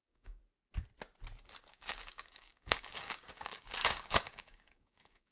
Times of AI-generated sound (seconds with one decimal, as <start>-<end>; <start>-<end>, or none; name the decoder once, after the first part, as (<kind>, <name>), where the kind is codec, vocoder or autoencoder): 0.0-0.4 (codec, DAC); 1.7-5.3